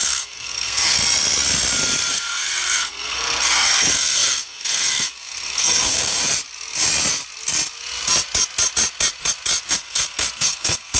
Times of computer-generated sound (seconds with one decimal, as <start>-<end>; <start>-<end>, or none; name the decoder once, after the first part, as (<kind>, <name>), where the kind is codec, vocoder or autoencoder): 0.0-1.0 (codec, SNAC); 2.1-6.2; 9.7-11.0